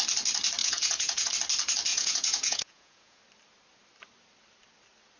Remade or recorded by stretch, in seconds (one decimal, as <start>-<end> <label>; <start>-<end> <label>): 0.0-0.6 recorded; 0.6-1.3 remade; 1.3-1.9 recorded; 1.9-3.2 remade; 3.2-5.2 recorded